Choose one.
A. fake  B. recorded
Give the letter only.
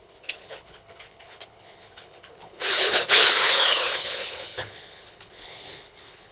A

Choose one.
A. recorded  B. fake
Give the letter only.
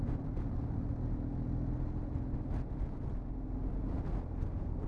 A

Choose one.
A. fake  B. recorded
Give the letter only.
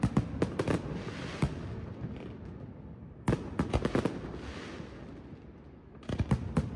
B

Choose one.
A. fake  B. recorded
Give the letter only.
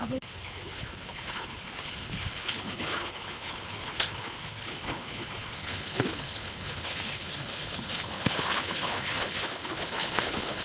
A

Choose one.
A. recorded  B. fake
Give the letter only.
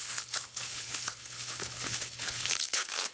B